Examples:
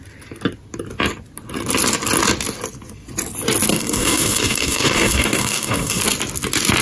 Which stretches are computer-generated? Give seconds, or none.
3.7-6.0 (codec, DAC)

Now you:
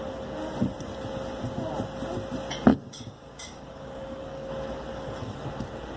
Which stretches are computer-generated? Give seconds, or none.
2.7-4.5 (codec, DAC)

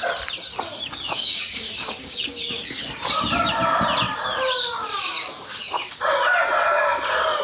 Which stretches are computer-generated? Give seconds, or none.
0.7-2.9 (codec, DAC); 4.9-5.9